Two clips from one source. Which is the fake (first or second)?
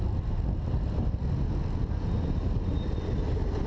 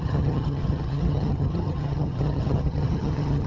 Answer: second